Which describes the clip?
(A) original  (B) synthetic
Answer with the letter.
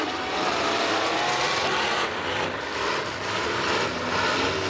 B